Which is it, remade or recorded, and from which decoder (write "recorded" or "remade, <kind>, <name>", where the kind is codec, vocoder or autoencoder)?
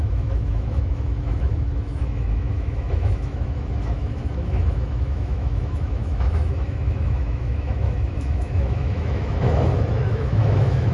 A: remade, autoencoder, DAC-VAE